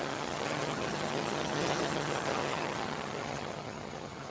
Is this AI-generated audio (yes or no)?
yes